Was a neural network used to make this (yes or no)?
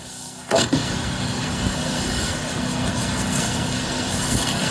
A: yes